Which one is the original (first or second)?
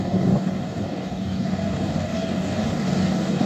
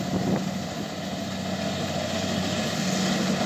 second